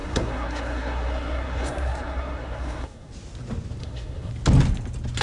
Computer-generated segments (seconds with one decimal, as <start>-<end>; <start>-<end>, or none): 0.0-3.1; 3.8-4.3